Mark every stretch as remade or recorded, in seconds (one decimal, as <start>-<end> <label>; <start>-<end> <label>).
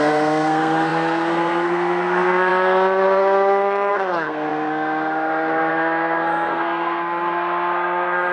0.0-8.3 remade